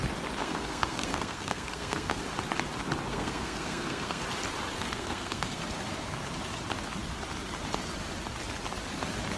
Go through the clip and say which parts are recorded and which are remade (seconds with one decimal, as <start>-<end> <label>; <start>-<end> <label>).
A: 0.0-0.4 recorded; 0.4-2.2 remade; 2.2-3.1 recorded; 3.1-4.2 remade; 4.2-4.7 recorded; 4.7-5.6 remade; 5.6-9.4 recorded